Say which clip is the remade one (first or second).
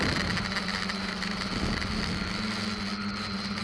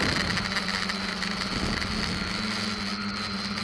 first